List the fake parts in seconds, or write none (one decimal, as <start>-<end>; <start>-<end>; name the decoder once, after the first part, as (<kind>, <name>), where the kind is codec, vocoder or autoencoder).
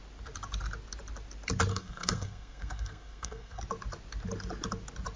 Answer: 1.7-3.6 (codec, SNAC)